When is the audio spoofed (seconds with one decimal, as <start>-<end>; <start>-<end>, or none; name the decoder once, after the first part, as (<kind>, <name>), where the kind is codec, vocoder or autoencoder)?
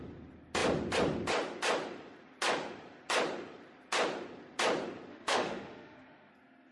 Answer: 5.1-6.3 (autoencoder, DAC-VAE)